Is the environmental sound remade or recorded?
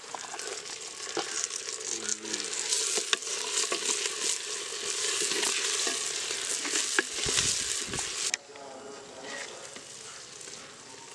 recorded